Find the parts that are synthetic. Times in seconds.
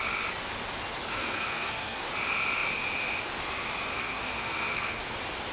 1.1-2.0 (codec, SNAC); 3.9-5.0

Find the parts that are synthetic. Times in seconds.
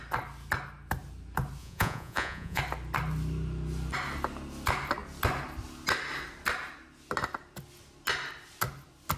1.6-2.6 (vocoder, Vocos)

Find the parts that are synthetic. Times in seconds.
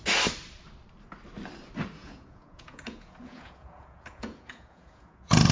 2.0-5.5 (vocoder, Vocos)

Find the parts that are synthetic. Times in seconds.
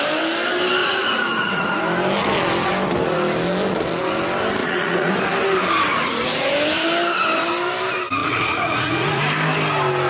0.8-1.8 (vocoder, Vocos); 4.6-5.1; 5.9-6.5; 8.2-9.2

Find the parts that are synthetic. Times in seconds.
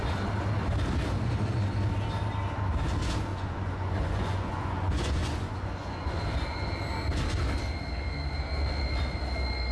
3.3-6.2 (vocoder, Vocos)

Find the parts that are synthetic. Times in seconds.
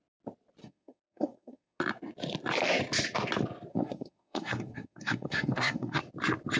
0.6-1.8 (codec, SNAC); 3.7-6.0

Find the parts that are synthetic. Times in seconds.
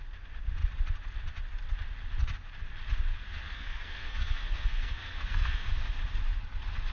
3.1-5.7 (codec, SNAC)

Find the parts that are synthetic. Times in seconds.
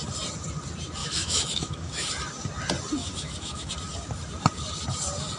1.0-2.1 (autoencoder, DAC-VAE); 3.0-3.7